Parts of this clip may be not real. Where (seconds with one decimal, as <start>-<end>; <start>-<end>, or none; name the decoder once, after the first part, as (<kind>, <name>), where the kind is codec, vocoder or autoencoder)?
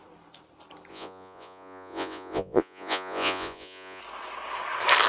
0.9-4.0 (vocoder, Vocos)